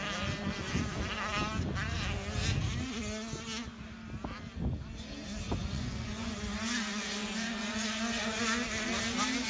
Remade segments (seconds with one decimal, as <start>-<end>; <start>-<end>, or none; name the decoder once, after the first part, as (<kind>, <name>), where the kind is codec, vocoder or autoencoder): 5.6-6.3 (vocoder, Vocos); 6.9-8.4